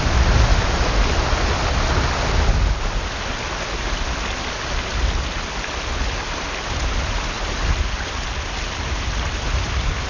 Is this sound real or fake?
real